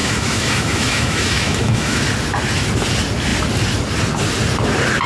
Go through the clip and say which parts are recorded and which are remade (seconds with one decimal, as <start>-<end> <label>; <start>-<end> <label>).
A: 0.0-2.0 remade; 2.0-5.1 recorded